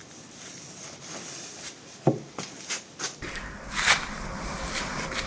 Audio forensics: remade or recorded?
recorded